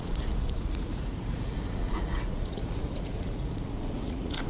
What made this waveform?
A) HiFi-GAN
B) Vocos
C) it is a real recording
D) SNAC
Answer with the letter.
B